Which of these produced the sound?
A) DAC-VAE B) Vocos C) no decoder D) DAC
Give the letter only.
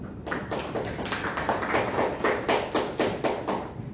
C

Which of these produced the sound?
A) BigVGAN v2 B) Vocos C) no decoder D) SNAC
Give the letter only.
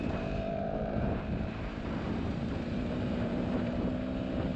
A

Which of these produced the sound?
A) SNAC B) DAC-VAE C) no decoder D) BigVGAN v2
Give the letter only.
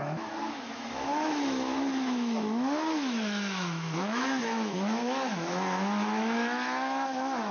B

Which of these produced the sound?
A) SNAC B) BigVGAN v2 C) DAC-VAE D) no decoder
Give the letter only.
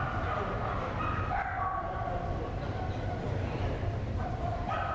B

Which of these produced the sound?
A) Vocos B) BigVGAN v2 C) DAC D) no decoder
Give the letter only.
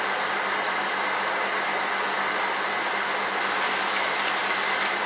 D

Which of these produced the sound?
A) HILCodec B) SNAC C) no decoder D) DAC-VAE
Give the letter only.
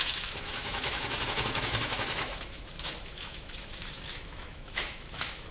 D